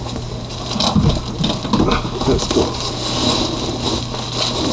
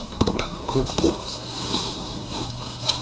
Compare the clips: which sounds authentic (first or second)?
first